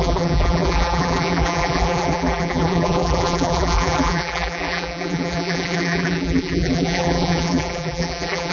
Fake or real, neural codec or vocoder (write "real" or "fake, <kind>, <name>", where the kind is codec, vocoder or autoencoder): fake, vocoder, BigVGAN v2